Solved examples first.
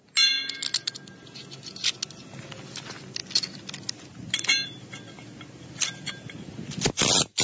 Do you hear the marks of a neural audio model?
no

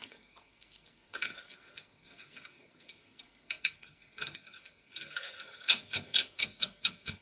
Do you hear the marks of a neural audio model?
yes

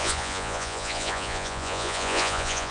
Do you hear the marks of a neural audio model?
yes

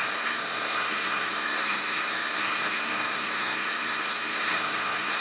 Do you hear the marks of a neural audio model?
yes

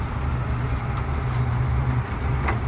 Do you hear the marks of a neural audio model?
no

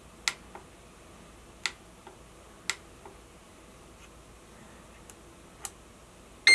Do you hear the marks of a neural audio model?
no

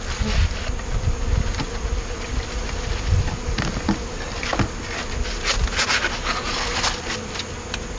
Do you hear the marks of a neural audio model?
no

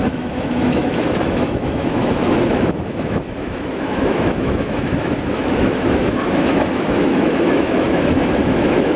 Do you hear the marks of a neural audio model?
yes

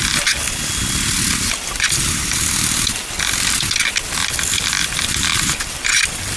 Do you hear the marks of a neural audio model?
no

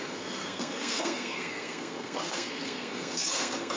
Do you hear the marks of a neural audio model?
yes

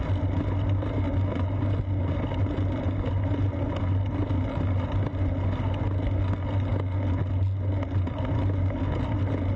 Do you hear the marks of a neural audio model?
no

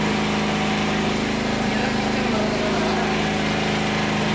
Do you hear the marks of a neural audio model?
no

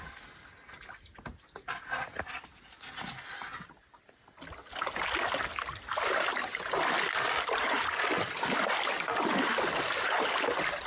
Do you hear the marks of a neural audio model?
no